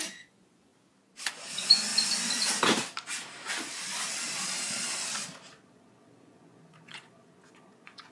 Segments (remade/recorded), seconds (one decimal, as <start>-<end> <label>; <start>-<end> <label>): 0.0-0.7 remade; 0.7-1.3 recorded; 1.3-1.9 remade; 1.9-5.7 recorded; 5.7-8.1 remade